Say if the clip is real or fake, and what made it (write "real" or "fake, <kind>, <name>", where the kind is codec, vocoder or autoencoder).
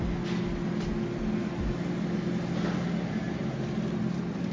real